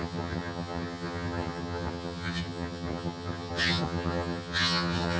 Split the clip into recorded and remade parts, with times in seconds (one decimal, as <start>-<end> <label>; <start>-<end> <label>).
0.0-5.2 remade